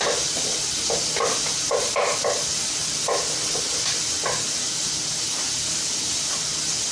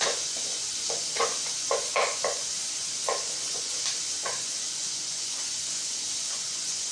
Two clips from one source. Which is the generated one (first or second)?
second